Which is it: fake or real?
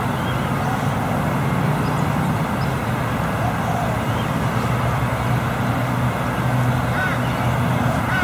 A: real